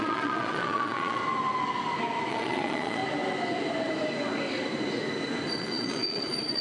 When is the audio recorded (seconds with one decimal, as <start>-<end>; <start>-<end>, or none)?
1.2-2.3; 3.0-5.6

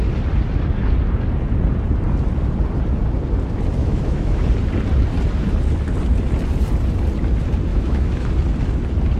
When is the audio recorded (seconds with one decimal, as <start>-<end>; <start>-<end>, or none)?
0.0-3.8; 4.4-7.7; 8.3-9.2